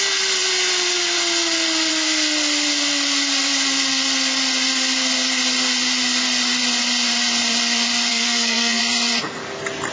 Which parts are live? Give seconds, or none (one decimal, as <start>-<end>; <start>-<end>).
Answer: 0.0-8.1; 8.8-9.9

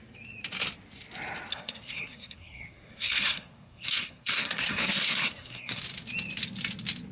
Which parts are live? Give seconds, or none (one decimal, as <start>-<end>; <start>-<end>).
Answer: 0.0-1.5; 5.8-7.1

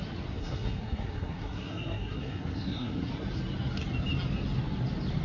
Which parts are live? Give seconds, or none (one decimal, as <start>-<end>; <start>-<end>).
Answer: 0.0-0.4; 3.1-5.2

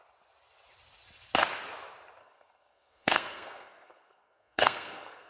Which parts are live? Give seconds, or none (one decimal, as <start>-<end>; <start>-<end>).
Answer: 0.0-2.2